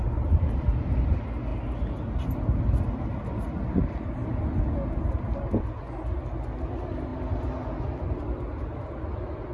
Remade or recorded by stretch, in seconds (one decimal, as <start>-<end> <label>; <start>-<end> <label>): 0.0-9.5 recorded